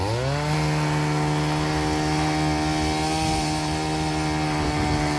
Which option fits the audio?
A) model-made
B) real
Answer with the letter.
B